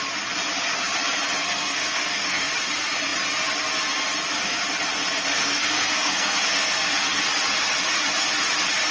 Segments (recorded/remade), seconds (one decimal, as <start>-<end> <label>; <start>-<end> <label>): 0.0-1.4 recorded; 1.4-2.5 remade; 2.5-5.3 recorded; 5.3-7.2 remade; 7.2-8.9 recorded